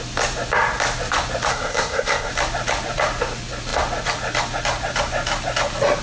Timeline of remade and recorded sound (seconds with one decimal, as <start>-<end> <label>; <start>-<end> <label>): 0.0-1.5 recorded; 1.5-2.3 remade; 2.3-6.0 recorded